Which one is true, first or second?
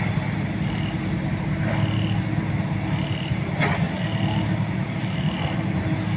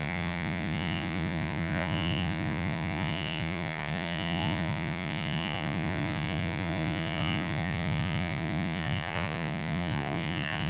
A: first